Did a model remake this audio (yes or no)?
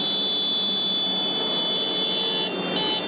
no